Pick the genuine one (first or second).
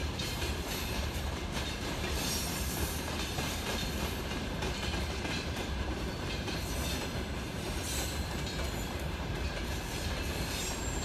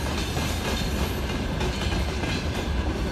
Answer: second